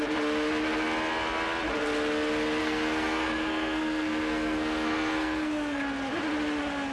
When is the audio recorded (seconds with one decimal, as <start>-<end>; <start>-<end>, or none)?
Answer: 0.0-2.6; 5.8-6.9